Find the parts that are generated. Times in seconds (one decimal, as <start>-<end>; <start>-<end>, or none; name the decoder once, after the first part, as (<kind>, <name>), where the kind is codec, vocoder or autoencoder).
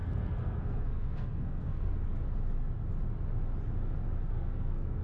0.0-2.1 (codec, SNAC); 4.3-5.0